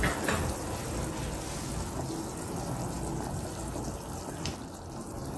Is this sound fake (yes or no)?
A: no